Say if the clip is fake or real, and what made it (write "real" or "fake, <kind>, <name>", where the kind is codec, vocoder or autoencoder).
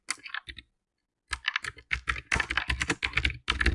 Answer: real